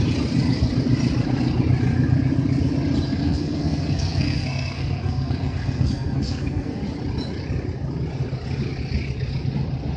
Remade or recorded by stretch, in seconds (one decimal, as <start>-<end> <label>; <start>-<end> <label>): 0.0-3.1 recorded; 3.1-6.8 remade; 6.8-10.0 recorded